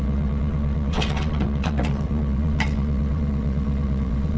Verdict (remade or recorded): remade